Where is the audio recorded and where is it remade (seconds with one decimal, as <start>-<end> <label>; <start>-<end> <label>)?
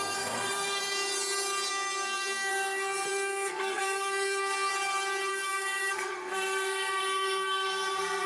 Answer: 0.0-0.8 remade; 0.8-1.7 recorded; 1.7-4.7 remade; 4.7-5.3 recorded; 5.3-8.3 remade